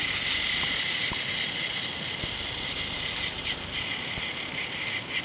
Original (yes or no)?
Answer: yes